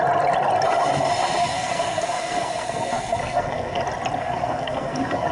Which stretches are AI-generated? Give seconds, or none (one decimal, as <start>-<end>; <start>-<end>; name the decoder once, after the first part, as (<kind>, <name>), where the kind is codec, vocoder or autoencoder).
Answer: 1.4-3.8 (codec, SNAC); 4.2-5.3